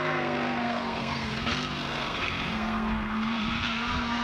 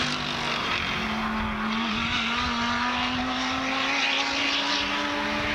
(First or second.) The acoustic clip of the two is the second